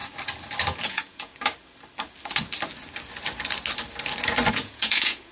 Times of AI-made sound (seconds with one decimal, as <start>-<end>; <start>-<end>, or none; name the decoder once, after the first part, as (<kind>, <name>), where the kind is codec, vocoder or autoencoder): 0.9-1.3 (vocoder, Vocos); 4.5-5.3